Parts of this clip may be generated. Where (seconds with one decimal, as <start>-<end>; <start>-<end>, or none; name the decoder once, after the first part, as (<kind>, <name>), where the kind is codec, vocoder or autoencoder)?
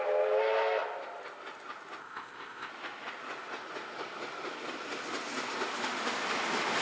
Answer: 2.0-2.7 (codec, ZipCodec)